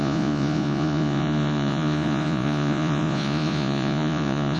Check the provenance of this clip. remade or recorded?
remade